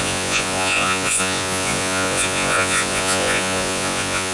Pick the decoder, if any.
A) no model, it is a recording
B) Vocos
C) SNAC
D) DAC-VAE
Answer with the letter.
B